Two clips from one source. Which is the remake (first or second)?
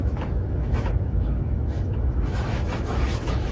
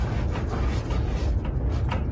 first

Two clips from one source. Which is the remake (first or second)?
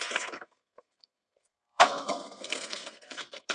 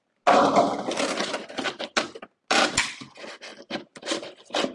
first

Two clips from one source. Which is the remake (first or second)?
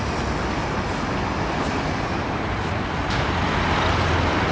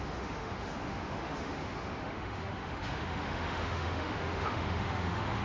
second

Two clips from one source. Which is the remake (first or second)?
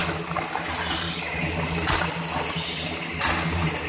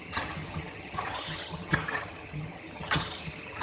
second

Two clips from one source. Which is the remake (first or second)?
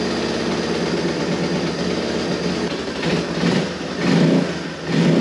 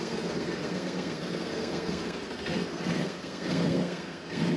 second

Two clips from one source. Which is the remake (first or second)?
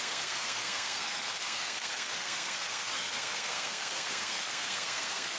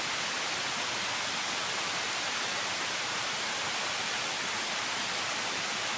first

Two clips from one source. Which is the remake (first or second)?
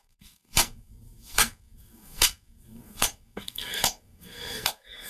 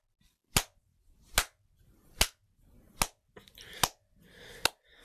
first